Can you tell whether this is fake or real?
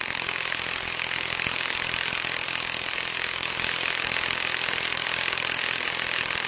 real